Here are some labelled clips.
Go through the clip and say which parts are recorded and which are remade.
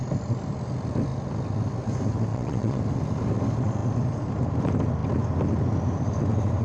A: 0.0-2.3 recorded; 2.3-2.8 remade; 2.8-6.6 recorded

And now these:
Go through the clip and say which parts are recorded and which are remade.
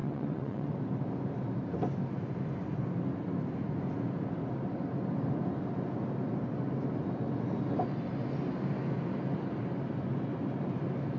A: 0.0-0.7 remade; 0.7-11.2 recorded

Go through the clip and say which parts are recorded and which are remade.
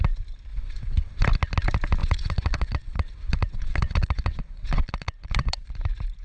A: 0.0-0.5 recorded; 0.5-1.2 remade; 1.2-2.0 recorded; 2.0-5.7 remade; 5.7-6.2 recorded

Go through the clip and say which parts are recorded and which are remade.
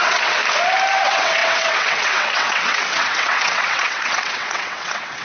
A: 0.0-0.4 remade; 0.4-0.9 recorded; 0.9-5.2 remade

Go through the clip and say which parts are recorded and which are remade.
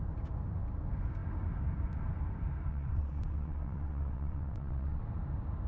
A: 0.0-2.7 recorded; 2.7-5.0 remade; 5.0-5.7 recorded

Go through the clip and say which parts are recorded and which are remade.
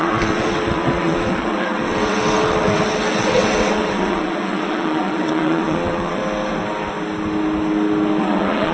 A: 0.0-6.2 remade; 6.2-8.2 recorded; 8.2-8.7 remade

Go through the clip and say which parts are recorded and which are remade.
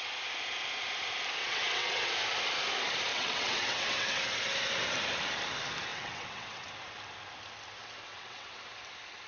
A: 0.0-1.4 recorded; 1.4-2.1 remade; 2.1-3.1 recorded; 3.1-4.2 remade; 4.2-5.9 recorded; 5.9-6.7 remade; 6.7-8.1 recorded; 8.1-8.6 remade; 8.6-9.3 recorded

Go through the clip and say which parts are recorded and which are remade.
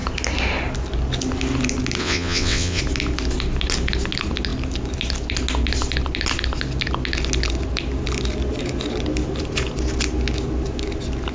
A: 0.0-2.0 recorded; 2.0-2.8 remade; 2.8-11.3 recorded